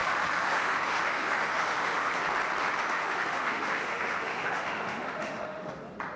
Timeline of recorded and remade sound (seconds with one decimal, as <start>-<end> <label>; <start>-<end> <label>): 0.0-2.1 remade; 2.1-2.6 recorded; 2.6-5.7 remade; 5.7-6.2 recorded